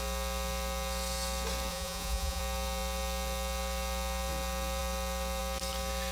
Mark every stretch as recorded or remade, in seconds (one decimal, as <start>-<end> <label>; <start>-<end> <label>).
0.0-1.7 recorded; 1.7-2.4 remade; 2.4-6.1 recorded